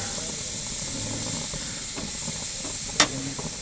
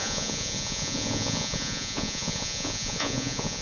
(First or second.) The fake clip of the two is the second